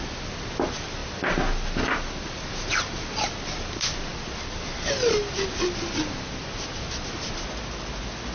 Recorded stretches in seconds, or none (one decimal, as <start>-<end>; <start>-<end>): 0.0-8.3